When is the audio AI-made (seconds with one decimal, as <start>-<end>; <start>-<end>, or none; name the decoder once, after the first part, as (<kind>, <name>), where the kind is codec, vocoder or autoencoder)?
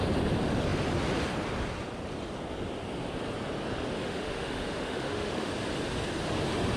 4.0-5.5 (autoencoder, DAC-VAE)